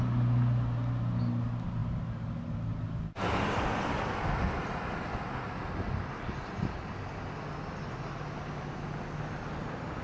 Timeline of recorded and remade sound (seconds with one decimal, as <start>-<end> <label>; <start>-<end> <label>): 0.0-10.0 recorded